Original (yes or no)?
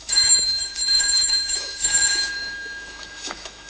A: no